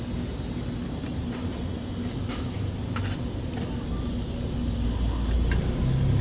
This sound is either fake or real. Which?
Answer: real